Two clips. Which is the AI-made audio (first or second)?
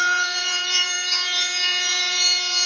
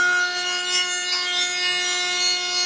first